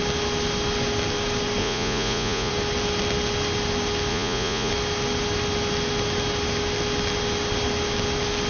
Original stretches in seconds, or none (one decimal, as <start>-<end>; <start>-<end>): 0.0-1.6; 2.5-4.1; 4.7-8.5